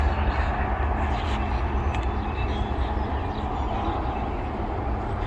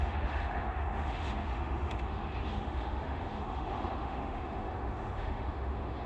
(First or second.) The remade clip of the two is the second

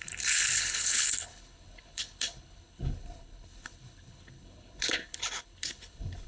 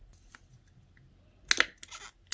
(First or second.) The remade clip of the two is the first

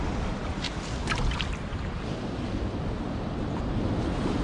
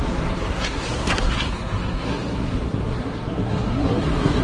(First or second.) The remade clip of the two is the second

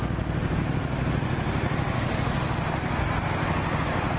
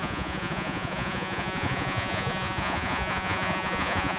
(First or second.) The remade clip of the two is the second